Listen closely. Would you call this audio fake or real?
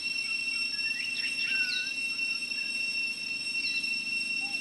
real